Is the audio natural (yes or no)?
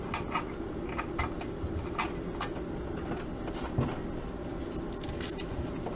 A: yes